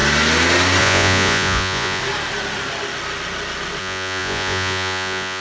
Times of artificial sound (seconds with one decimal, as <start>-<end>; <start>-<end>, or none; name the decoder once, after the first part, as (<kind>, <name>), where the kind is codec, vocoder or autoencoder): 0.8-2.0 (vocoder, Vocos); 3.8-5.4